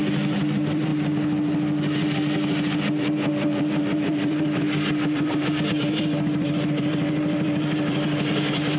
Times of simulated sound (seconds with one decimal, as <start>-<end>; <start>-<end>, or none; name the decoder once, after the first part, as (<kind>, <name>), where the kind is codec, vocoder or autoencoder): 0.0-0.9 (vocoder, BigVGAN v2); 2.8-8.8